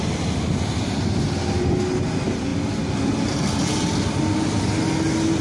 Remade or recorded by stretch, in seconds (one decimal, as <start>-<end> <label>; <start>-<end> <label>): 0.0-5.4 recorded